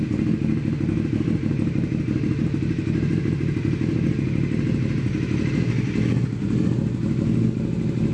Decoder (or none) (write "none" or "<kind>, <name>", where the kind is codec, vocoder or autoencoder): none